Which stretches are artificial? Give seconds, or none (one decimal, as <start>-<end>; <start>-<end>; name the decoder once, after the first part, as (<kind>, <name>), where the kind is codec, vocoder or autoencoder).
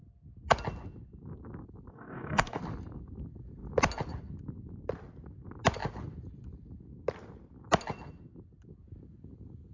1.9-2.6 (codec, DAC)